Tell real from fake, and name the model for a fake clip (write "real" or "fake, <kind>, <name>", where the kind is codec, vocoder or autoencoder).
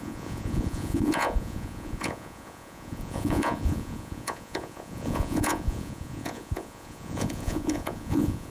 fake, vocoder, Vocos